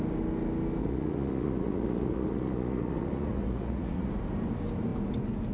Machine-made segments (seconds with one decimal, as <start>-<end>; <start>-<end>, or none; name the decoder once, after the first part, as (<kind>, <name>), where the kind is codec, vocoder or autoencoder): 0.8-4.1 (vocoder, Vocos)